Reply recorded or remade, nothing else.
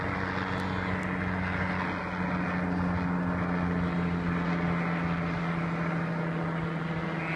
recorded